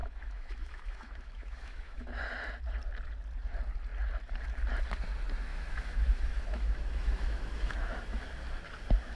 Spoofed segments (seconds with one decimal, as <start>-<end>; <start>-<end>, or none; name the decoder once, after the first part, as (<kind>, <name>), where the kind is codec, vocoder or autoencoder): 0.0-2.2 (autoencoder, DAC-VAE); 5.5-8.2